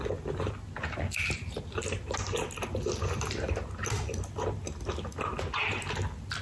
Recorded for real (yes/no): yes